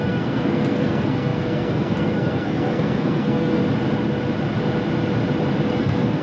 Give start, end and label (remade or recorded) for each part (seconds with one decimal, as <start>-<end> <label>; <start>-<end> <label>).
0.0-3.6 remade; 3.6-5.7 recorded; 5.7-6.2 remade